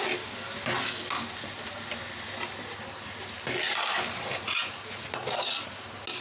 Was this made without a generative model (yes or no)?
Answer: yes